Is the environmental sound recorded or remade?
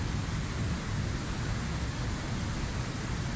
recorded